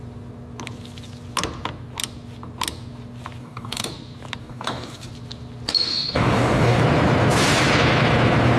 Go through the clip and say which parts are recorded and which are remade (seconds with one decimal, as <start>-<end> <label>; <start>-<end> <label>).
0.0-3.4 recorded; 3.4-3.9 remade; 3.9-4.4 recorded; 4.4-5.1 remade; 5.1-5.9 recorded; 5.9-6.8 remade; 6.8-8.6 recorded